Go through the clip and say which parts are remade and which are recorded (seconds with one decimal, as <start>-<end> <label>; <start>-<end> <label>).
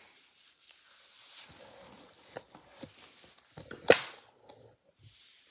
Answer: 0.0-5.5 recorded